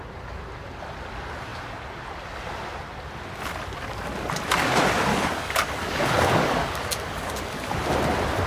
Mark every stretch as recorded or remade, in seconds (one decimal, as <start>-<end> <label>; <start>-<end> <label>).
0.0-5.1 recorded; 5.1-7.7 remade; 7.7-8.5 recorded